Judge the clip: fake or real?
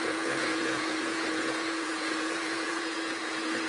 fake